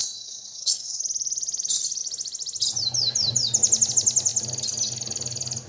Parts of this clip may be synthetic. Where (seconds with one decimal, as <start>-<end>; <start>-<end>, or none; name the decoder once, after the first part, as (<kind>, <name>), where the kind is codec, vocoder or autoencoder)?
0.0-1.0 (codec, SNAC)